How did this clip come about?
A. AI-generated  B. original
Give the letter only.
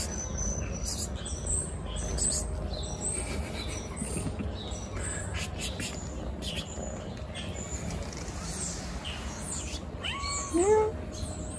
B